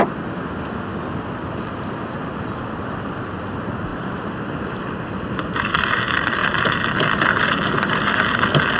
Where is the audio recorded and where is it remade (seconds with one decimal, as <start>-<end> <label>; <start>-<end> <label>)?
0.0-2.3 recorded; 2.3-3.2 remade; 3.2-3.9 recorded; 3.9-4.9 remade; 4.9-8.8 recorded